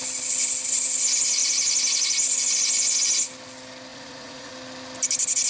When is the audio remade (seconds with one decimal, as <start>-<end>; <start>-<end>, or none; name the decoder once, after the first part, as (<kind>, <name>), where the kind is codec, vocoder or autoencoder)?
3.9-4.5 (vocoder, Vocos)